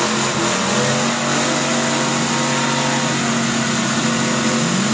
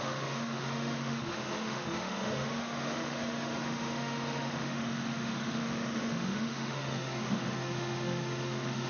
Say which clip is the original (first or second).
first